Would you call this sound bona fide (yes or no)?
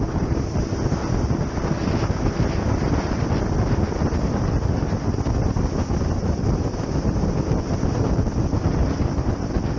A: yes